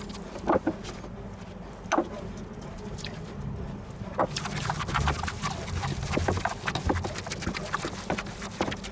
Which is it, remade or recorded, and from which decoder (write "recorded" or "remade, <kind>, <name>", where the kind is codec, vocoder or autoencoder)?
recorded